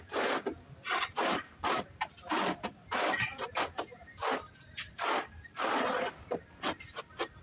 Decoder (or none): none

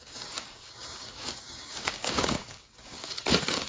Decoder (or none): codec, DAC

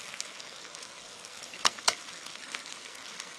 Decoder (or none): codec, SNAC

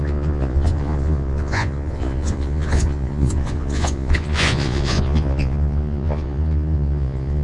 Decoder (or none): vocoder, Vocos